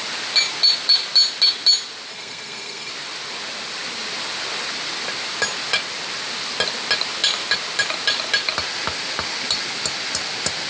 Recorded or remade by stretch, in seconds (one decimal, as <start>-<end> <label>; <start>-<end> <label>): 0.0-2.1 recorded; 2.1-2.9 remade; 2.9-10.7 recorded